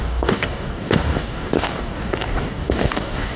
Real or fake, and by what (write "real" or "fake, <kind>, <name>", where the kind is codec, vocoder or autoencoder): fake, codec, DAC